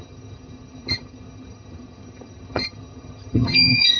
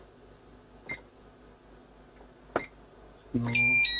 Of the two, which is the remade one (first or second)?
first